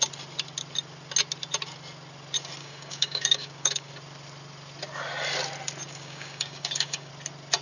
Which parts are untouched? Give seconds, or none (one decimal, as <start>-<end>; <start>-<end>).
0.0-2.6; 3.9-5.9; 7.1-7.6